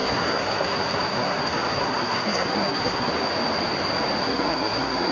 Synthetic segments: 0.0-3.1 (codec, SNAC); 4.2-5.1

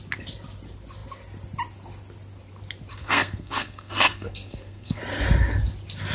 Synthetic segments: 2.9-5.0 (codec, SNAC)

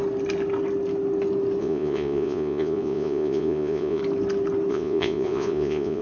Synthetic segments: 1.6-4.0 (vocoder, Vocos); 4.7-6.0